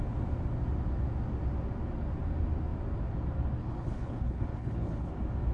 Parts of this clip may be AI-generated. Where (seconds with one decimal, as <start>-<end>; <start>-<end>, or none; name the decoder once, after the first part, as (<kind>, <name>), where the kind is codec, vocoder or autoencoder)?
3.6-5.1 (codec, HILCodec)